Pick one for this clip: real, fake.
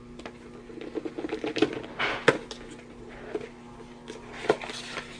real